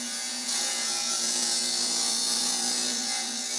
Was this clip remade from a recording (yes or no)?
yes